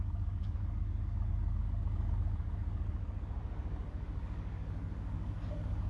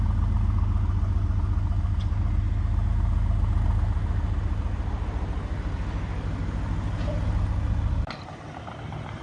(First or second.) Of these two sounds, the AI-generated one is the first